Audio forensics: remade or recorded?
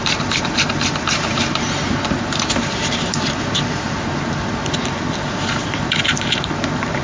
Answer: remade